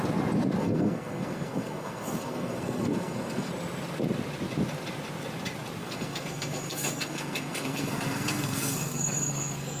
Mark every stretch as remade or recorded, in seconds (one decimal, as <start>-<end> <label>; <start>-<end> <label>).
0.0-0.6 recorded; 0.6-3.5 remade; 3.5-5.8 recorded; 5.8-9.8 remade